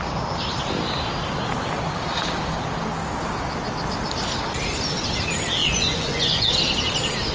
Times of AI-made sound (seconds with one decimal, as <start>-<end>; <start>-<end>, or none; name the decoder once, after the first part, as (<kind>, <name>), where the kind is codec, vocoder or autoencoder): 5.6-6.5 (vocoder, Vocos)